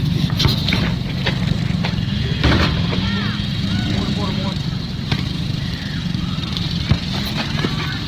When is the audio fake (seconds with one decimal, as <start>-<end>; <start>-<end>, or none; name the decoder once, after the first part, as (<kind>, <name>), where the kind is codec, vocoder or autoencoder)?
0.0-6.5 (vocoder, BigVGAN v2)